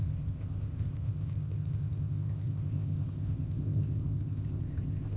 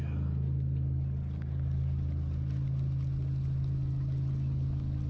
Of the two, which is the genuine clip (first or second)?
second